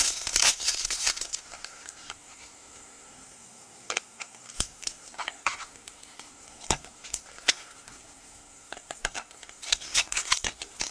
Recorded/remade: remade